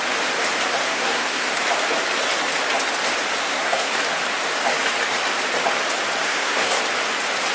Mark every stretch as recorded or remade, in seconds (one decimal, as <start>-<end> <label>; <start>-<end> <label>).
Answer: 0.0-0.8 recorded; 0.8-1.5 remade; 1.5-3.4 recorded; 3.4-4.0 remade; 4.0-6.2 recorded; 6.2-6.8 remade; 6.8-7.5 recorded

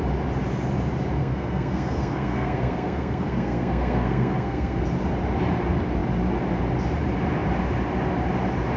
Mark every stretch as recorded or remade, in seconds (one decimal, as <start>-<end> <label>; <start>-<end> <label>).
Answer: 0.0-1.2 recorded; 1.2-4.8 remade; 4.8-8.8 recorded

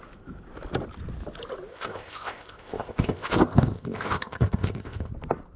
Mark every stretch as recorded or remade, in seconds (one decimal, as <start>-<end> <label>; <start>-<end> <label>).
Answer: 0.0-1.7 recorded; 1.7-5.1 remade; 5.1-5.6 recorded

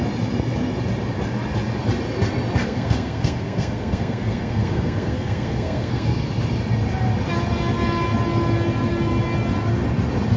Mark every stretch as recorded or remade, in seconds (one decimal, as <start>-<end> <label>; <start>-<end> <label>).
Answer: 0.0-2.6 recorded; 2.6-6.3 remade; 6.3-10.4 recorded

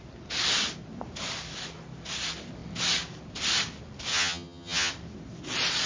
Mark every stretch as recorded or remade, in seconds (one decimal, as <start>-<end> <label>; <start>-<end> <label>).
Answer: 0.0-4.1 recorded; 4.1-4.9 remade; 4.9-5.9 recorded

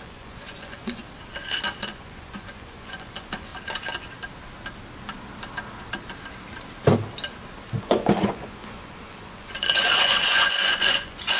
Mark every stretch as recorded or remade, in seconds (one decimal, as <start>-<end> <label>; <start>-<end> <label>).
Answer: 0.0-1.0 remade; 1.0-1.8 recorded; 1.8-3.5 remade; 3.5-7.8 recorded; 7.8-11.4 remade

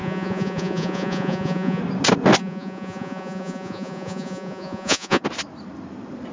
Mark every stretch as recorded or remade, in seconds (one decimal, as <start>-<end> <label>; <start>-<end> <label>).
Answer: 0.0-1.8 remade; 1.8-2.4 recorded; 2.4-5.2 remade; 5.2-6.3 recorded

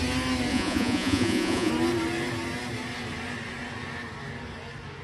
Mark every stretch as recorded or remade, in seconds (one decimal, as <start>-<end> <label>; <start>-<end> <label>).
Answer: 0.0-0.5 recorded; 0.5-1.7 remade; 1.7-5.0 recorded